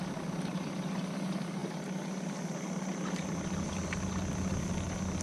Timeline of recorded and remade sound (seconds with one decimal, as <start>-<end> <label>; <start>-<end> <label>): 0.0-5.2 recorded